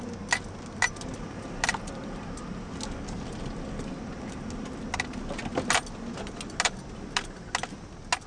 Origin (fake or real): real